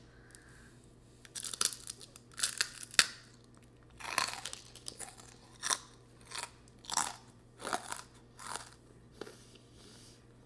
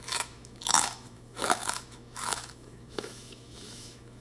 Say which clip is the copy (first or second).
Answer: second